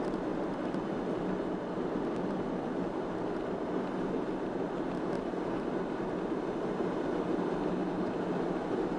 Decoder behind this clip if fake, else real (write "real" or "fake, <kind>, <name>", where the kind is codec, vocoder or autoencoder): real